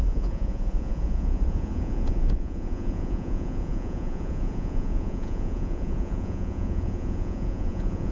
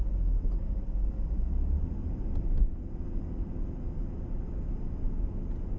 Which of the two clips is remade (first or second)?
first